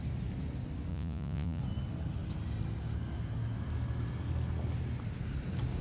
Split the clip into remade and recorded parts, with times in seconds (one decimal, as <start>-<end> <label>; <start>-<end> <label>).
0.0-0.9 recorded; 0.9-1.6 remade; 1.6-5.8 recorded